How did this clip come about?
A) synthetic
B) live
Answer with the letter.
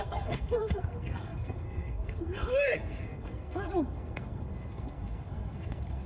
A